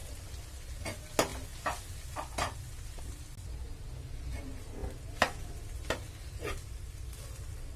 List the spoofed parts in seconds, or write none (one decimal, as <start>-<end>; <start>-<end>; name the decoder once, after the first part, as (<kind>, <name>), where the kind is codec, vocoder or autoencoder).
none

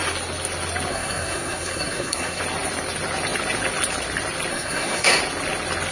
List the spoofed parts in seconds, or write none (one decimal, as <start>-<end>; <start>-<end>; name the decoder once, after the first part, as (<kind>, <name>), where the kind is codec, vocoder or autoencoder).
0.9-2.4 (codec, SNAC); 4.5-5.2

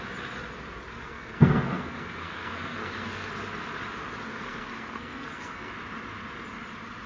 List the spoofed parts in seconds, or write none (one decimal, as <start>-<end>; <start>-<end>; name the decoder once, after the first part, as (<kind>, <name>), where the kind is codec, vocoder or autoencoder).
0.9-3.3 (codec, SNAC); 4.3-5.7

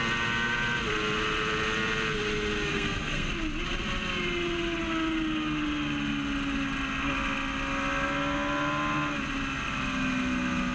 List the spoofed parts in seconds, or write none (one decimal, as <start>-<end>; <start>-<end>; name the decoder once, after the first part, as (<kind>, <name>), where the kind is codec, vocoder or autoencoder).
2.7-3.3 (codec, SNAC)

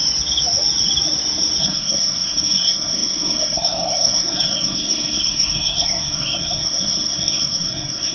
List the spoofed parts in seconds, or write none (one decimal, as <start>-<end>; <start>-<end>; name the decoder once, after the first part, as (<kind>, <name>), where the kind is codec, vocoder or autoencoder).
1.6-8.1 (codec, SNAC)